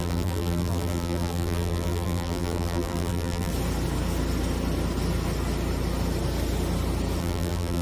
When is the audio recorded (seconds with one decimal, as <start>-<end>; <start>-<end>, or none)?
3.5-7.2